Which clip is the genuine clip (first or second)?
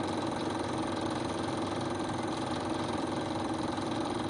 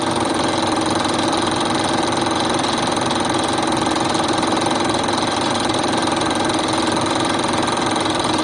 second